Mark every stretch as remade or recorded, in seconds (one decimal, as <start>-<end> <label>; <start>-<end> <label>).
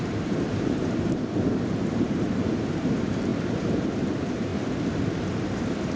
0.0-4.5 remade; 4.5-6.0 recorded